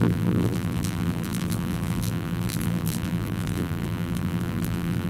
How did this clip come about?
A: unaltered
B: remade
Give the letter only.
B